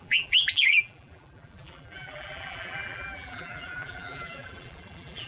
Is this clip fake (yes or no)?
yes